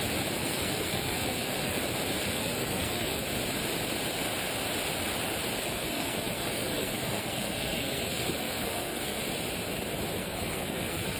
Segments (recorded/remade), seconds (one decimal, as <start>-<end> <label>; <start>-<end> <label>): 0.0-0.4 recorded; 0.4-1.8 remade; 1.8-2.2 recorded; 2.2-3.2 remade; 3.2-5.6 recorded; 5.6-9.2 remade; 9.2-10.2 recorded; 10.2-11.2 remade